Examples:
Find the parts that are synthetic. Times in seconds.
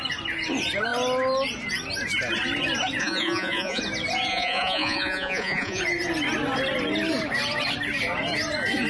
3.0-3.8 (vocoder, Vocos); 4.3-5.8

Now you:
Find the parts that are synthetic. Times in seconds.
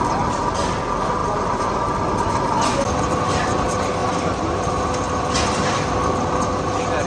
1.2-2.5 (vocoder, BigVGAN v2); 4.0-4.7